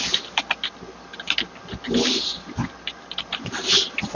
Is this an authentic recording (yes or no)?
yes